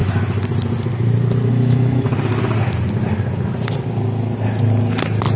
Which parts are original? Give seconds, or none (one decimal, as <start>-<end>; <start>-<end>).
0.0-1.5; 2.1-5.4

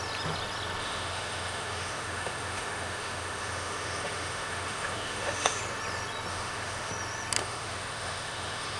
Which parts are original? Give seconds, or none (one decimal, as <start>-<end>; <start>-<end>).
0.0-0.8; 5.6-6.3; 6.9-7.4

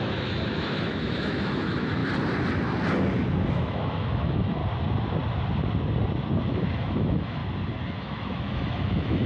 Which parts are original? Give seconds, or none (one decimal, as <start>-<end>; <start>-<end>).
2.0-3.5; 4.6-6.5; 7.4-8.0